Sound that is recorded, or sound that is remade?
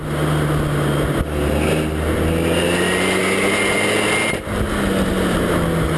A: recorded